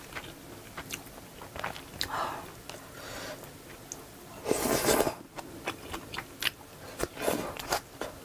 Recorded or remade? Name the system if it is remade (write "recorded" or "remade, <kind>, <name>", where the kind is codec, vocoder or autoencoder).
recorded